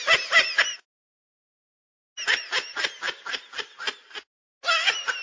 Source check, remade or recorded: recorded